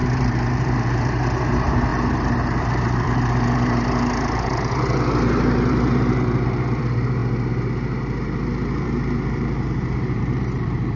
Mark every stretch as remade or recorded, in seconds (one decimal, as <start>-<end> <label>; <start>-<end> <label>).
0.0-7.2 remade; 7.2-8.7 recorded; 8.7-11.0 remade